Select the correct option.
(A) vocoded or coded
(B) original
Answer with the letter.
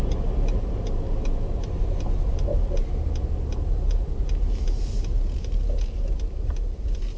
B